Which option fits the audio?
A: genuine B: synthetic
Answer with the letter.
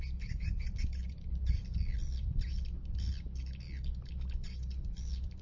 A